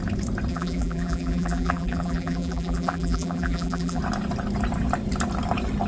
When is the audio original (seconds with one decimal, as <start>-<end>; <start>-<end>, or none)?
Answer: 0.0-0.5; 4.0-5.9